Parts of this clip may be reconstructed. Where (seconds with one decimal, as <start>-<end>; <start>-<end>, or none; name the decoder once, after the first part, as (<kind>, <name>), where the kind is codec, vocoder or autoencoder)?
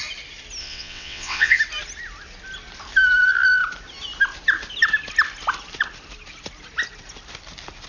0.6-1.6 (vocoder, WaveNeXt)